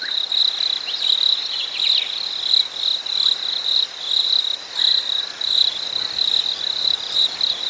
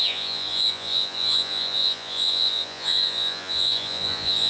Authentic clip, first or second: first